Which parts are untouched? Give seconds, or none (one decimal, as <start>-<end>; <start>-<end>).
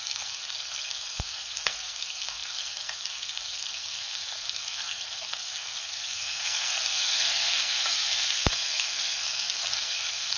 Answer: none